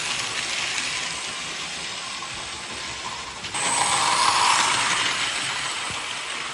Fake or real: real